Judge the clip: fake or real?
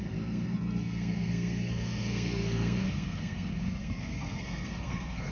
fake